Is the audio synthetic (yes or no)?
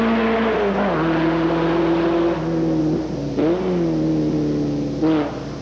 no